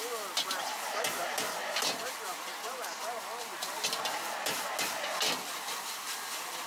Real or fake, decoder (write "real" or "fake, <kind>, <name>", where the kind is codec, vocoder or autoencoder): real